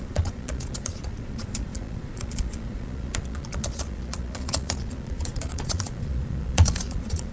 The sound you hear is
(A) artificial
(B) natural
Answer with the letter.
A